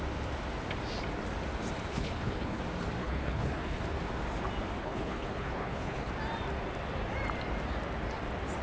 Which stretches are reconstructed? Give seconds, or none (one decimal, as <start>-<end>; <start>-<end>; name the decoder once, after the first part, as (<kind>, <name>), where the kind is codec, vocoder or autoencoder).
1.9-2.6 (codec, HILCodec); 3.0-3.8; 4.8-6.1